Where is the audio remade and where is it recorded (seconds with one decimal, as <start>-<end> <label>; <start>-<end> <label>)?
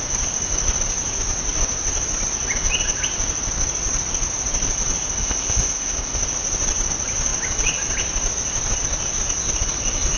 0.0-5.2 recorded; 5.2-6.2 remade; 6.2-10.2 recorded